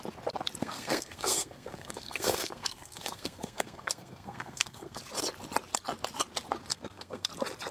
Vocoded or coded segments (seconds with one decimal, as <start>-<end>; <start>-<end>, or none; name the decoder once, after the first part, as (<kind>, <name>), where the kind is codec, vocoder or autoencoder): 0.6-5.0 (codec, SNAC); 6.7-7.3